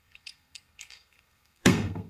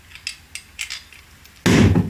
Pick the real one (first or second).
second